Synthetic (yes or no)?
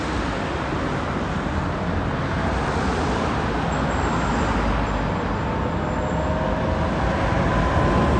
no